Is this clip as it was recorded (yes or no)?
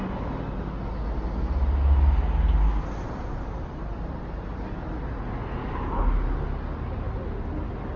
yes